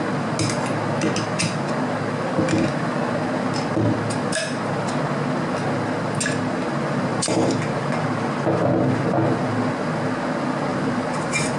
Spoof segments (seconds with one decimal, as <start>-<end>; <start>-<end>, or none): 7.1-7.8; 10.7-11.6